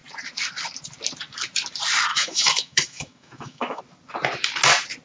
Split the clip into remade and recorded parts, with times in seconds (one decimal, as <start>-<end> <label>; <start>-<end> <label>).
0.0-2.1 recorded; 2.1-3.8 remade; 3.8-5.0 recorded